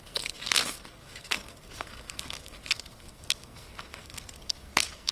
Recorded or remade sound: remade